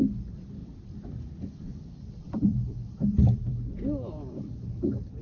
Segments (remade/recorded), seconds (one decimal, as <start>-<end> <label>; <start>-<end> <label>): 0.0-0.6 recorded; 0.6-3.7 remade; 3.7-5.2 recorded